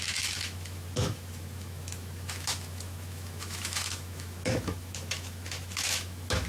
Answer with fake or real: fake